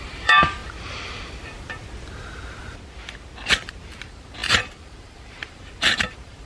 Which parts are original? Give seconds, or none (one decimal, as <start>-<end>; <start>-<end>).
0.6-4.0